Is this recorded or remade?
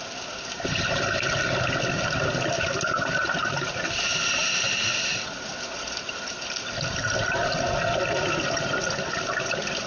recorded